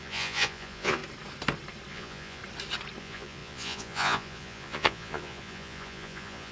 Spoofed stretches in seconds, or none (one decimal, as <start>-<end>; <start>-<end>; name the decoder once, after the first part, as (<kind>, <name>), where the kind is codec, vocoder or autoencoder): 0.0-1.0 (vocoder, Vocos); 1.9-2.4; 3.0-6.5